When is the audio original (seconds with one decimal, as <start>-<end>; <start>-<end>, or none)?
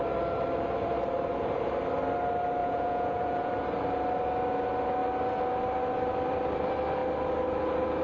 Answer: 0.0-2.6; 3.5-8.0